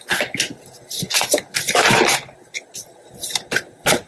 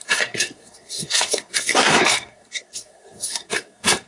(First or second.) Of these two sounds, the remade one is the second